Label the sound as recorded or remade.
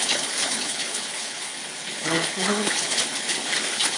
remade